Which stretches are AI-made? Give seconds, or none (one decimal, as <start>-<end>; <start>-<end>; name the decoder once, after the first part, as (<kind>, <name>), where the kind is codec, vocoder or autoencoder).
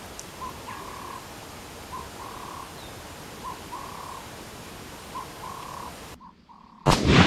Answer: none